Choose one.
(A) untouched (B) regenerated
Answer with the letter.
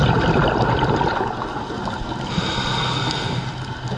A